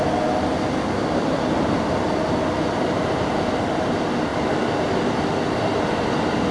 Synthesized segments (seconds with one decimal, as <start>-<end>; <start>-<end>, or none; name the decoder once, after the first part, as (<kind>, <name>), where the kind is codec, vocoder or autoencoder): none